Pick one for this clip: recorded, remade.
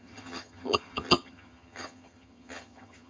remade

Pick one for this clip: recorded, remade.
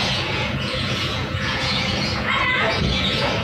remade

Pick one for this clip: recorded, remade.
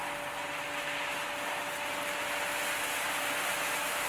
recorded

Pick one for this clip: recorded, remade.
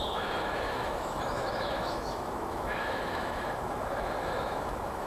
remade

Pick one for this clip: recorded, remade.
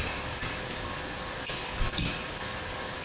recorded